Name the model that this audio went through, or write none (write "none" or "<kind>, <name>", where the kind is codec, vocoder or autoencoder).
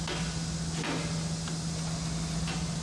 none